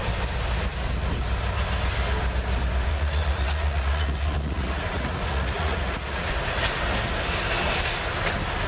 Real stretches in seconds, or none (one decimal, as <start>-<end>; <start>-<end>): 0.0-2.9; 6.3-8.7